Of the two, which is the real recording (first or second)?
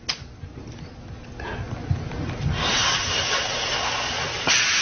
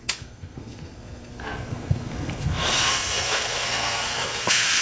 first